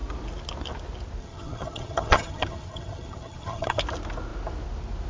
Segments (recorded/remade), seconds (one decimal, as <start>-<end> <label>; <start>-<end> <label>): 0.0-1.2 recorded; 1.2-3.8 remade; 3.8-5.1 recorded